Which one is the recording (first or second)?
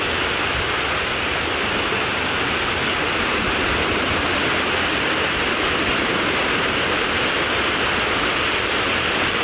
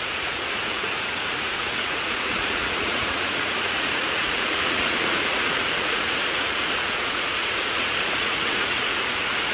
first